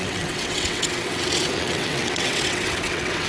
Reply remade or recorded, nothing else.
remade